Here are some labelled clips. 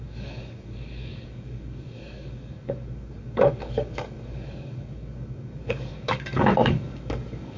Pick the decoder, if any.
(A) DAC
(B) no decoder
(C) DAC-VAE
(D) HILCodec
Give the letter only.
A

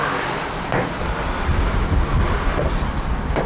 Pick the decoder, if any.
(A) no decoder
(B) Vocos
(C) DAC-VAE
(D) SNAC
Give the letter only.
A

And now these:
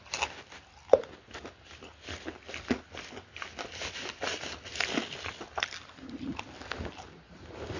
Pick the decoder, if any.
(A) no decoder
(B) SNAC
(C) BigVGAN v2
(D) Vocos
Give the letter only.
A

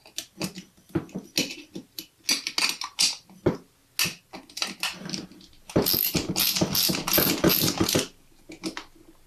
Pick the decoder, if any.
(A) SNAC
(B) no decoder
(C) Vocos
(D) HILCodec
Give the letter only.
B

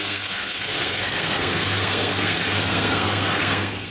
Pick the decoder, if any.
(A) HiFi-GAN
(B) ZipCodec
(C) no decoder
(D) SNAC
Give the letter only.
D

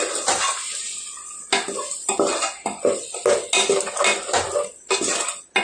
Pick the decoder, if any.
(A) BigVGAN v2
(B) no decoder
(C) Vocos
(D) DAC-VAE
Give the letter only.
B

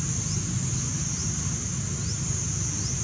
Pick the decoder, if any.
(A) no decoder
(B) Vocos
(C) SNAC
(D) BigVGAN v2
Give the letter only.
A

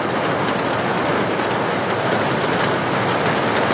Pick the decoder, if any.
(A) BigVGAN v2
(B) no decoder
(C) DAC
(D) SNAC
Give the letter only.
B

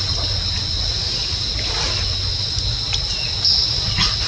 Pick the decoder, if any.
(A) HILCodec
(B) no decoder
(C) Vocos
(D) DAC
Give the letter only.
B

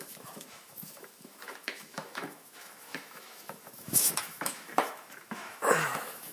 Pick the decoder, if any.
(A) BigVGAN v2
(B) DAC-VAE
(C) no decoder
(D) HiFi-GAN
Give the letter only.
B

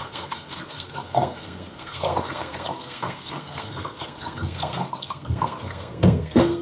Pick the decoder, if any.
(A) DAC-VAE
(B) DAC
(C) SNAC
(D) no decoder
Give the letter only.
C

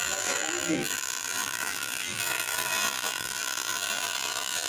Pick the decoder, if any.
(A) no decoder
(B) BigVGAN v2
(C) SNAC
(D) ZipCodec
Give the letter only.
B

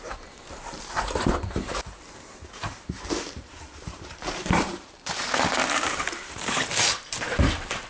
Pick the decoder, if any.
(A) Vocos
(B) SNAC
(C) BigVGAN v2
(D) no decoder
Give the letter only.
C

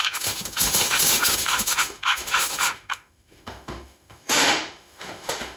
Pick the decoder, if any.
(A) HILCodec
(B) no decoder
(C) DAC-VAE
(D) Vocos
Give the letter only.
C